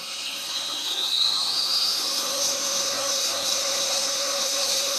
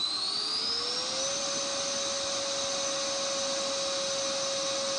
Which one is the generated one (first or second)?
first